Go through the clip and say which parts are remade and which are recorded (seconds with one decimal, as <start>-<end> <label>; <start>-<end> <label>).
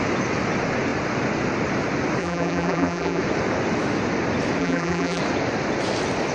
0.0-2.2 recorded; 2.2-3.2 remade; 3.2-4.6 recorded; 4.6-5.2 remade; 5.2-6.3 recorded